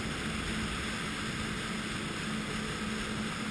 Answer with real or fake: real